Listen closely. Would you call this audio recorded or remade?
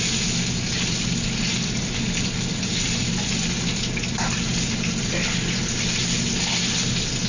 recorded